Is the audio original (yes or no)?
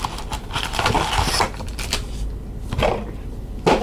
yes